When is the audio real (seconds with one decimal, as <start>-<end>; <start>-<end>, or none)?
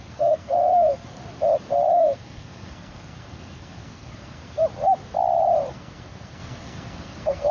1.2-1.9; 4.6-5.7